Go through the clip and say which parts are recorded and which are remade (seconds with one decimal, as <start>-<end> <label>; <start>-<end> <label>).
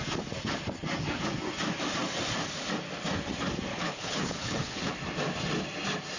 0.0-3.7 recorded; 3.7-4.9 remade; 4.9-6.2 recorded